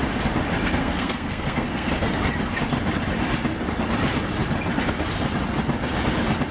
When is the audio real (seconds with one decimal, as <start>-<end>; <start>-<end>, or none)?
0.0-0.8; 1.9-6.5